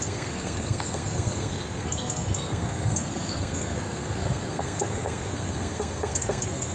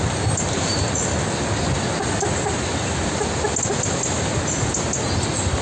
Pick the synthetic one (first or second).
first